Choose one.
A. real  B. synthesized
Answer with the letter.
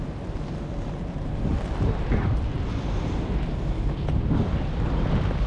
A